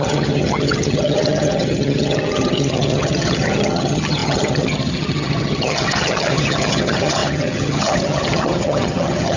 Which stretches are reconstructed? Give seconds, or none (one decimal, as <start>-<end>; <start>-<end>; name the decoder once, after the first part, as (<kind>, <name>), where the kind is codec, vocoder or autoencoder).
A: 0.0-9.4 (vocoder, HiFi-GAN)